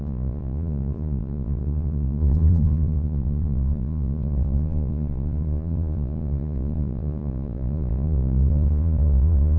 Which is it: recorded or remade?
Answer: remade